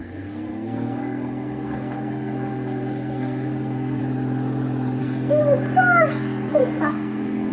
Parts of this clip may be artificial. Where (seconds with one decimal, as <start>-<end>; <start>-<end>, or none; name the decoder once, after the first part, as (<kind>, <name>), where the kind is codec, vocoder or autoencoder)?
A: 0.0-4.0 (codec, SNAC); 5.0-5.4; 6.1-7.5